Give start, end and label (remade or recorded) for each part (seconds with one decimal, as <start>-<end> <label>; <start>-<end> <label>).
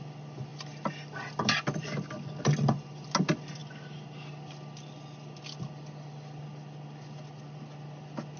0.0-8.4 recorded